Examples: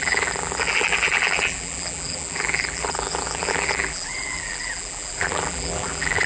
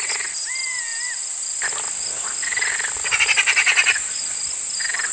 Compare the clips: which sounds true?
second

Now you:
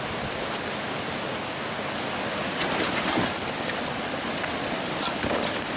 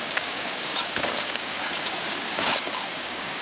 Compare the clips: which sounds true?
first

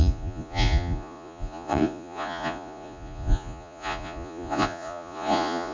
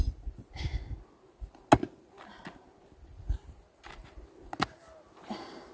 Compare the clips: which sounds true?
second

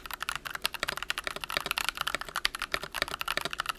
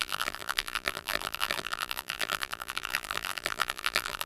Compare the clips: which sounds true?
first